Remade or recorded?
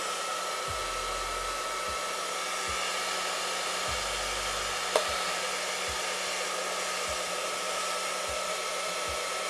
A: recorded